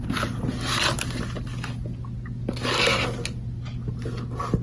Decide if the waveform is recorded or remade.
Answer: recorded